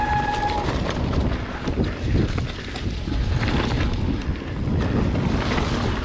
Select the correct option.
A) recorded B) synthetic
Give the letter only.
A